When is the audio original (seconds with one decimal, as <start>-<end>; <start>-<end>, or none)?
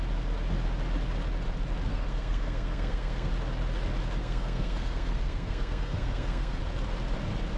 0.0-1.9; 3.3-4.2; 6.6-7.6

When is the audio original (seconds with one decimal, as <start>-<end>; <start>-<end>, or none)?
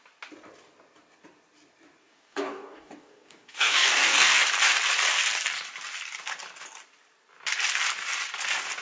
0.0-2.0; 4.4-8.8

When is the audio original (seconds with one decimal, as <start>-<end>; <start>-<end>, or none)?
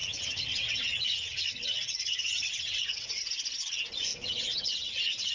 3.2-4.1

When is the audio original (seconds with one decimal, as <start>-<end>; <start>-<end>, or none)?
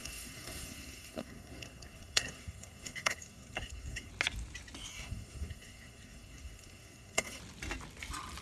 4.1-4.9; 7.4-8.4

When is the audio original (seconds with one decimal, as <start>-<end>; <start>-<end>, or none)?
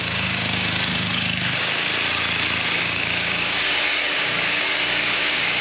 1.9-2.8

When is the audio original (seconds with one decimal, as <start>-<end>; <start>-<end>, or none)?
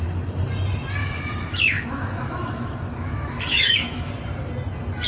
0.0-1.0; 4.1-5.1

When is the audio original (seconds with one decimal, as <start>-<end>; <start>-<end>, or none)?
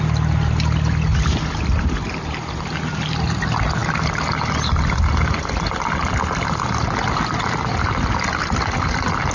0.0-9.3